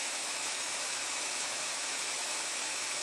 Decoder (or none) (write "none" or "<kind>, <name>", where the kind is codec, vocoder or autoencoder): autoencoder, DAC-VAE